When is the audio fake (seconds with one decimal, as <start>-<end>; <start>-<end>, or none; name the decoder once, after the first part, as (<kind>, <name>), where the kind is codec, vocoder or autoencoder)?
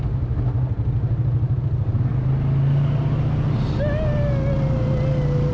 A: none